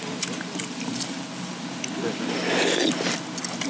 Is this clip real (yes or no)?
yes